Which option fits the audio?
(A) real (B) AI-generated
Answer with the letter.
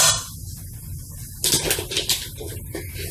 A